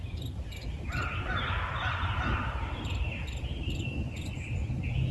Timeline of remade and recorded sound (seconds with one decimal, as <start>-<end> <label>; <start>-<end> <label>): 0.0-0.6 recorded; 0.6-1.3 remade; 1.3-1.9 recorded; 1.9-5.1 remade